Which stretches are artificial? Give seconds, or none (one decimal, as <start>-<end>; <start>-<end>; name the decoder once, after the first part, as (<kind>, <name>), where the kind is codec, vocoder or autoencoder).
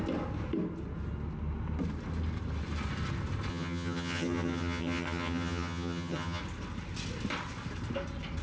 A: 3.5-6.4 (vocoder, HiFi-GAN)